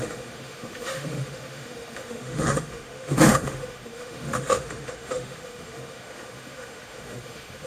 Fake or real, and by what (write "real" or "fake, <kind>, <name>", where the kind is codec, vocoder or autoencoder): fake, autoencoder, DAC-VAE